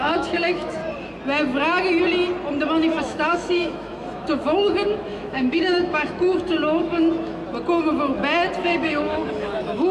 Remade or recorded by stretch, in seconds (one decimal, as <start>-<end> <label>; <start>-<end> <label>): 0.0-0.8 remade; 0.8-3.0 recorded; 3.0-7.4 remade; 7.4-8.6 recorded; 8.6-9.9 remade